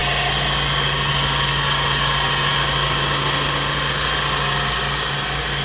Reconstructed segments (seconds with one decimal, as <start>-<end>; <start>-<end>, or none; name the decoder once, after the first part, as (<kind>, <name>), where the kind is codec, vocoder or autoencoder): none